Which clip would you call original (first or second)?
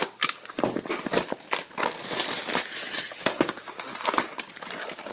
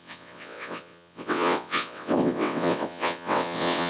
first